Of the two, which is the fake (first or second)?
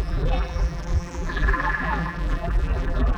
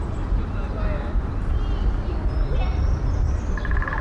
first